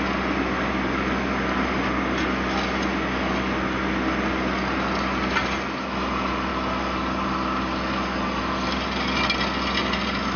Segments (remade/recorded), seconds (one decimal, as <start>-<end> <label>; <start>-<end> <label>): 0.0-10.4 recorded